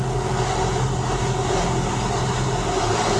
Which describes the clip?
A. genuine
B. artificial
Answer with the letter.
A